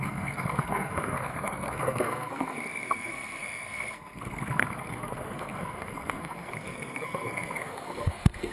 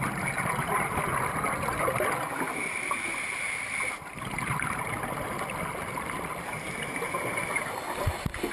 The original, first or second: second